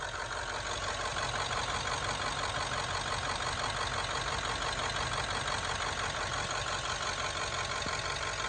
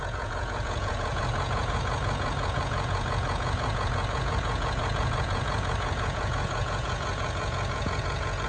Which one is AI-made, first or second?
second